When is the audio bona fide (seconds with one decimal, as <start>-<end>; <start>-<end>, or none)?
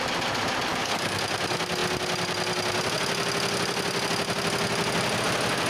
0.0-0.7; 1.2-5.7